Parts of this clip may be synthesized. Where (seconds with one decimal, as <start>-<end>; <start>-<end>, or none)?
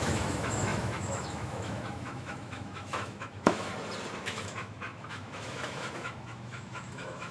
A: 0.0-3.7; 4.2-7.3